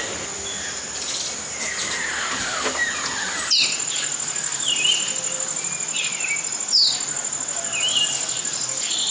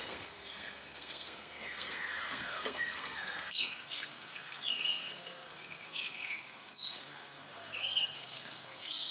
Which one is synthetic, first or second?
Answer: second